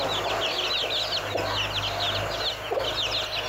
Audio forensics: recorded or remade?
recorded